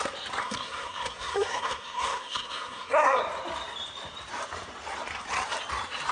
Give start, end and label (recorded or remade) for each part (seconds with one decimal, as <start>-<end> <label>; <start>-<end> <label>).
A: 0.0-0.4 recorded; 0.4-3.2 remade; 3.2-6.1 recorded